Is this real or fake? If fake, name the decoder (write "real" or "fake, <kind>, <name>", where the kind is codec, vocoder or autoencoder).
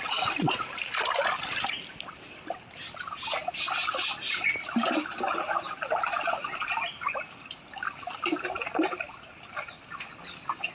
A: real